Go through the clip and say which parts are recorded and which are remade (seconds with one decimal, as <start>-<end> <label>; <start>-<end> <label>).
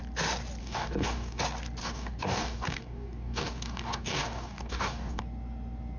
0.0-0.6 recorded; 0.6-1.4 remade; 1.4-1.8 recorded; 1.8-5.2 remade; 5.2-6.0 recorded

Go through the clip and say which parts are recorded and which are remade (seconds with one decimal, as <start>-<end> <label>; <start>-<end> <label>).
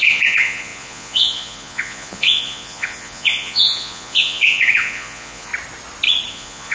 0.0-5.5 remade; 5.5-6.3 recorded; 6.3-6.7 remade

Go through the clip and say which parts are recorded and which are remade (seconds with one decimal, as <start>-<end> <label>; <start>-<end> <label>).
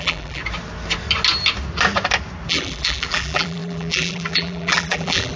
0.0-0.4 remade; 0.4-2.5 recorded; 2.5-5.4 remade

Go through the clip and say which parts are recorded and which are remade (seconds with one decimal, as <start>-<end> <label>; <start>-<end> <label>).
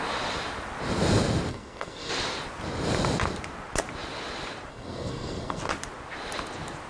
0.0-1.5 recorded; 1.5-2.1 remade; 2.1-4.7 recorded; 4.7-5.6 remade; 5.6-6.9 recorded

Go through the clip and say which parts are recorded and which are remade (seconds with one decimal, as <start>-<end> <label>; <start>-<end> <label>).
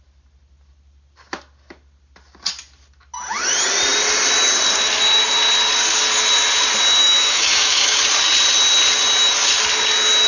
0.0-7.0 recorded; 7.0-8.0 remade; 8.0-10.3 recorded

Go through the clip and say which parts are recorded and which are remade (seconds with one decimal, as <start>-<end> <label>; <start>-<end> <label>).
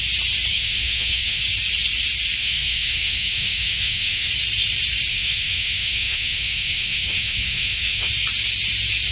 0.0-0.5 recorded; 0.5-1.4 remade; 1.4-2.4 recorded; 2.4-4.3 remade; 4.3-5.1 recorded; 5.1-8.1 remade; 8.1-9.1 recorded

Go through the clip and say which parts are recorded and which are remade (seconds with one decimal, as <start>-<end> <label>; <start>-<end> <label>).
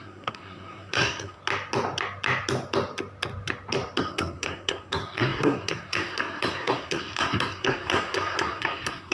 0.0-1.4 remade; 1.4-4.0 recorded; 4.0-9.1 remade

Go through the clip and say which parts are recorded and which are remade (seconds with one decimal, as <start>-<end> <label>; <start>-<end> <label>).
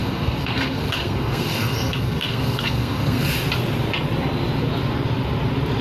0.0-3.3 remade; 3.3-5.8 recorded